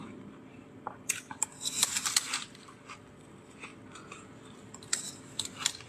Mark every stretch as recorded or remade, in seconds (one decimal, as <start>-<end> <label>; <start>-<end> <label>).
0.0-5.9 recorded